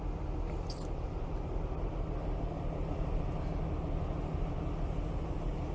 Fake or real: real